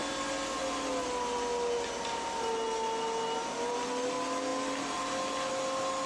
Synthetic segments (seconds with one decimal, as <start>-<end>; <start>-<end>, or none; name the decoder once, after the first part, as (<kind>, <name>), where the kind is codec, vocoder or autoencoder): none